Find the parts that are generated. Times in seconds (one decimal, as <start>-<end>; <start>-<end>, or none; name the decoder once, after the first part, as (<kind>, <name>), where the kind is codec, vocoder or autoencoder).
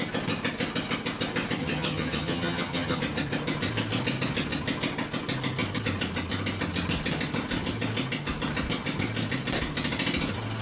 1.6-3.0 (vocoder, HiFi-GAN)